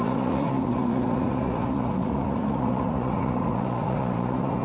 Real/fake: fake